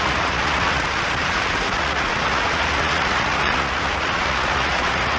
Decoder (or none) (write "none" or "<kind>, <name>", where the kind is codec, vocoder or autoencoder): vocoder, Vocos